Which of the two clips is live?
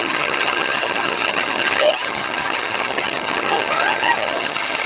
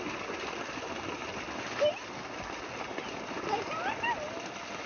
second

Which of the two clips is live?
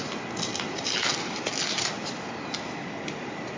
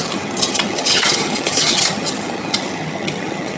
first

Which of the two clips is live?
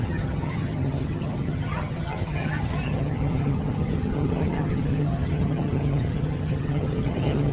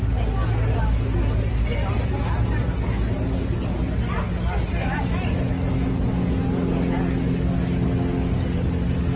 second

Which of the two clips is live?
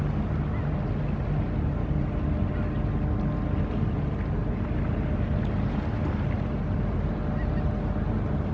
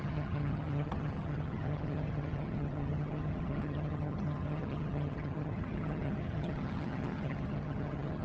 first